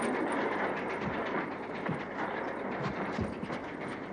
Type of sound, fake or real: real